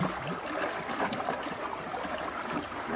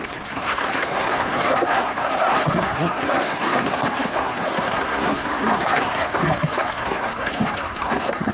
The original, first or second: first